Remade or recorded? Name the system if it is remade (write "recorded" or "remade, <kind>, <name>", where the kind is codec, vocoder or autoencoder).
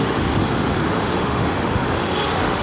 remade, autoencoder, DAC-VAE